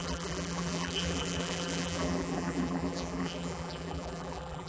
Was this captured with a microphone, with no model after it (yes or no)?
no